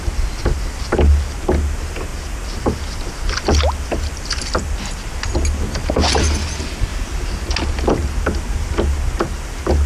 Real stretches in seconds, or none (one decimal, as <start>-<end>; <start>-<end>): 0.0-9.9